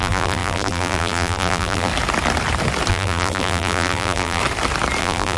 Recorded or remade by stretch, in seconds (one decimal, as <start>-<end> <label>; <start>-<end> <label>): 0.0-1.9 remade; 1.9-2.9 recorded; 2.9-4.4 remade; 4.4-5.0 recorded; 5.0-5.4 remade